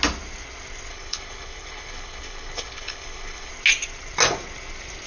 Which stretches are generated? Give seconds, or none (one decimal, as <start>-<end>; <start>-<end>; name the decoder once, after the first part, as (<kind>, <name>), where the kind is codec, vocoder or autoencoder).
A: 0.9-3.5 (codec, HILCodec)